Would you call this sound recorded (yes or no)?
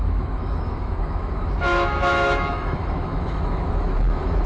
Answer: no